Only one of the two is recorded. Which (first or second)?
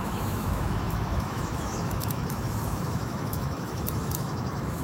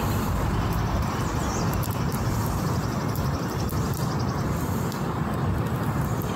second